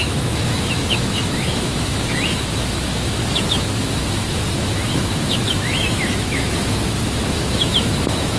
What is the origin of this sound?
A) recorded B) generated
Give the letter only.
B